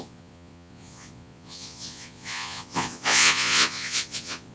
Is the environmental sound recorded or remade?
remade